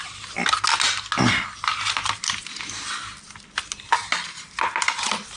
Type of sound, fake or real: real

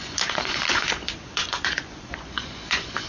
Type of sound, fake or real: fake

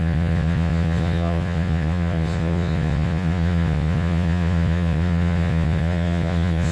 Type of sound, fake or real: fake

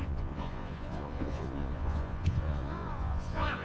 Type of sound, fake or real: fake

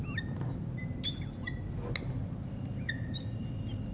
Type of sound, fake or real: real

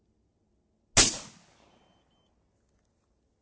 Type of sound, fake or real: real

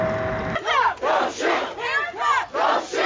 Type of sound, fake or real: real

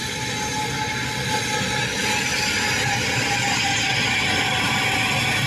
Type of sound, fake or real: real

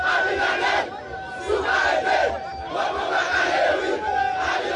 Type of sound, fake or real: real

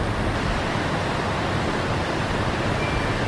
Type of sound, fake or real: real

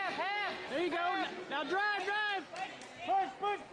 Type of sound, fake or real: real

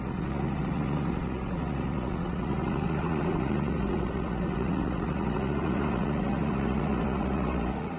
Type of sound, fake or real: fake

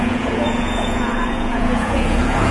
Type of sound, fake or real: fake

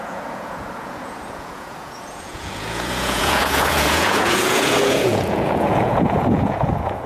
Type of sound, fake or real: fake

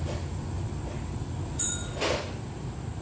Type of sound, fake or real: real